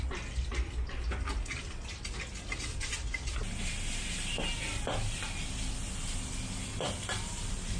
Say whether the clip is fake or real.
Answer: real